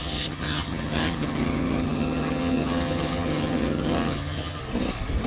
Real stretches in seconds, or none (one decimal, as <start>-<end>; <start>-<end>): 4.6-5.3

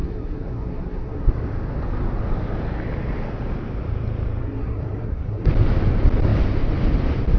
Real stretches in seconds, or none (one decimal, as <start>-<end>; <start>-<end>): 1.3-4.4; 5.5-7.4

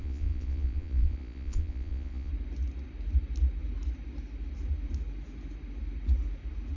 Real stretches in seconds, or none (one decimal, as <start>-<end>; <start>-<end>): 2.3-6.8